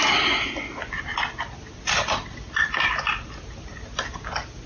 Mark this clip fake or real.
real